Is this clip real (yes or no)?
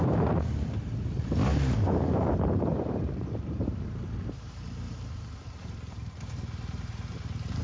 no